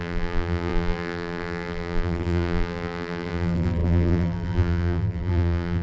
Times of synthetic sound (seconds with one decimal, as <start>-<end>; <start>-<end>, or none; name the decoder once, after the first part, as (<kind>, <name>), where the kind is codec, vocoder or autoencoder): 0.0-5.8 (vocoder, BigVGAN v2)